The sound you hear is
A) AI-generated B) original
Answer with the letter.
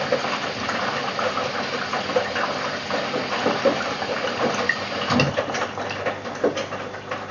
B